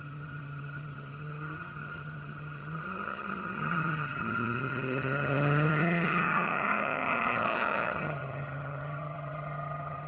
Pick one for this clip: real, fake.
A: fake